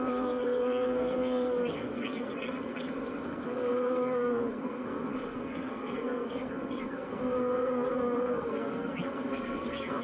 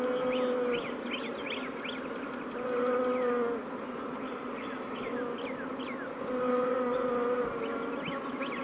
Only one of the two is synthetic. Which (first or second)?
first